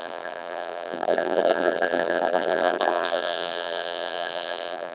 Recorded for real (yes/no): no